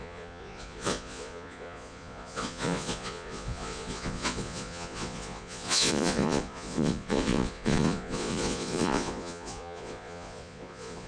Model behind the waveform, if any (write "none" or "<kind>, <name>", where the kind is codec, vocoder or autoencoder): vocoder, Vocos